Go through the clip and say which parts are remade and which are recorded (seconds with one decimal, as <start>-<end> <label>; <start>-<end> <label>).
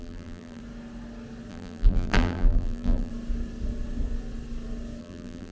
0.0-0.6 remade; 0.6-1.5 recorded; 1.5-3.1 remade; 3.1-5.0 recorded; 5.0-5.5 remade